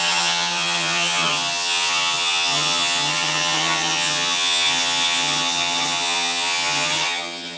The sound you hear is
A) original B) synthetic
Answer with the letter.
B